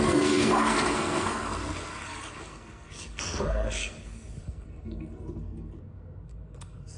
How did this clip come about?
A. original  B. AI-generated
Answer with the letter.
B